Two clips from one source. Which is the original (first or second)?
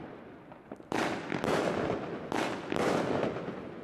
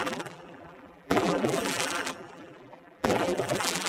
first